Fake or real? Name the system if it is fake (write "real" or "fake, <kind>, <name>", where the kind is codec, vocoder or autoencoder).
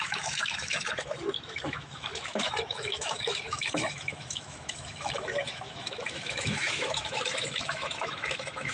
fake, autoencoder, DAC-VAE